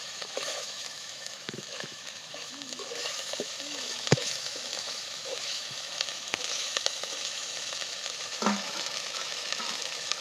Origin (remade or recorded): remade